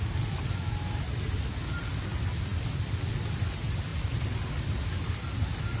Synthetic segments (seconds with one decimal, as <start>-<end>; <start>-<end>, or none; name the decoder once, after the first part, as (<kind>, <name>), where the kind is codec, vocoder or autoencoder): none